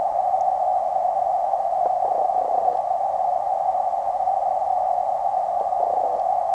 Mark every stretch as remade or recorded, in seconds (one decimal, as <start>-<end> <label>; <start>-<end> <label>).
0.0-6.5 recorded